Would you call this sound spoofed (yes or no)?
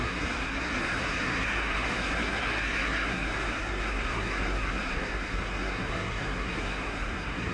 yes